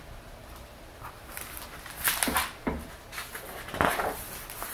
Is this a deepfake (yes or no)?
no